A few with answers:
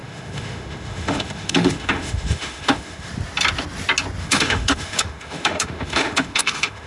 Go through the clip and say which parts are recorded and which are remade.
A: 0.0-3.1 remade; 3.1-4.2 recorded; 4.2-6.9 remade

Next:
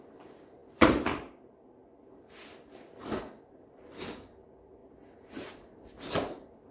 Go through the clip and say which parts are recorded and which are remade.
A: 0.0-6.7 recorded